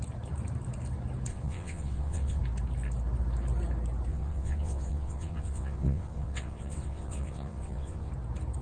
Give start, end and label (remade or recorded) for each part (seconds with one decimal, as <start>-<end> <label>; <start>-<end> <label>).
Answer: 0.0-1.3 recorded; 1.3-2.4 remade; 2.4-4.1 recorded; 4.1-8.1 remade; 8.1-8.6 recorded